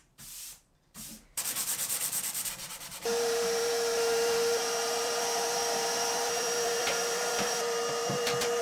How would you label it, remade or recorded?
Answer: remade